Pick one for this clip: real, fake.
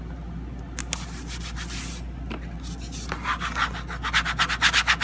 real